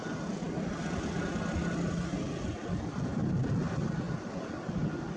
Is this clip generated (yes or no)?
no